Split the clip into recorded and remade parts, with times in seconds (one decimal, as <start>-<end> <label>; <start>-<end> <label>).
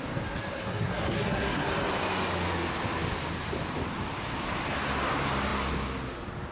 0.0-0.6 recorded; 0.6-1.7 remade; 1.7-6.5 recorded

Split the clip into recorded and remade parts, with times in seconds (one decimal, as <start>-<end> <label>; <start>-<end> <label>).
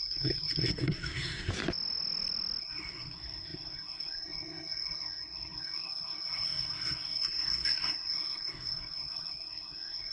0.0-1.5 remade; 1.5-2.6 recorded; 2.6-10.1 remade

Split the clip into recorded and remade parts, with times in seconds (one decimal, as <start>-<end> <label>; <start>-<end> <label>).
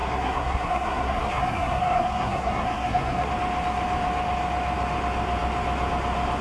0.0-3.3 remade; 3.3-6.4 recorded